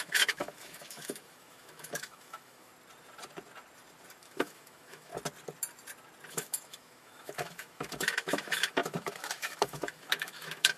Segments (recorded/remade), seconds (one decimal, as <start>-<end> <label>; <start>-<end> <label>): 0.0-2.7 remade; 2.7-4.2 recorded; 4.2-5.1 remade; 5.1-6.3 recorded; 6.3-10.8 remade